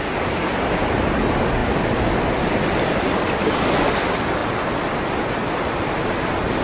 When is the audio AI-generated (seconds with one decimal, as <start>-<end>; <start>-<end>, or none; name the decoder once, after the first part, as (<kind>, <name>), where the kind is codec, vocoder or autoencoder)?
1.6-2.2 (vocoder, BigVGAN v2)